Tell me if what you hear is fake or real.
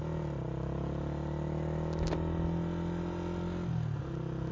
real